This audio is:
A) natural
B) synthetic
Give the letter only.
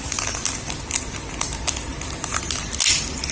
A